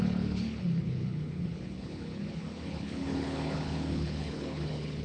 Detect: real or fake fake